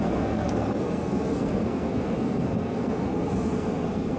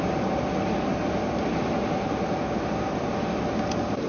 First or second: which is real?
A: second